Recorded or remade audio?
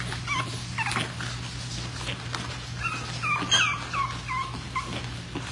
recorded